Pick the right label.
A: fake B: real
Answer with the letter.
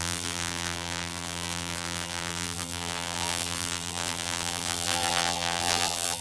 A